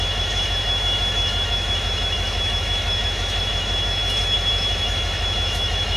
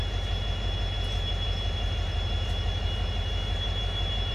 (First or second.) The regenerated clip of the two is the first